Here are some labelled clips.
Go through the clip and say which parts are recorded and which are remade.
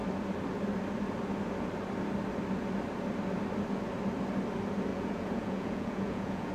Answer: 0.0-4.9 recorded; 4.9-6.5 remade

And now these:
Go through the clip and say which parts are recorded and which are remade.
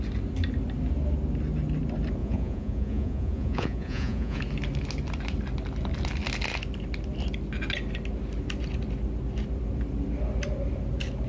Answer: 0.0-2.2 recorded; 2.2-4.4 remade; 4.4-11.3 recorded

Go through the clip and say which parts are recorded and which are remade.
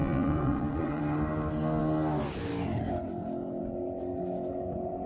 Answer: 0.0-1.0 remade; 1.0-5.1 recorded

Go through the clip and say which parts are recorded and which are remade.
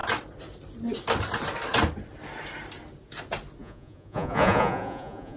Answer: 0.0-3.6 recorded; 3.6-5.4 remade